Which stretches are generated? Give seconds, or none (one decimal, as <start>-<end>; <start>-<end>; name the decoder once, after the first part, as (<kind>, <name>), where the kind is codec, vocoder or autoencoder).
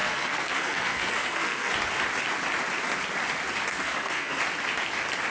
0.0-1.7 (codec, SNAC); 3.7-4.4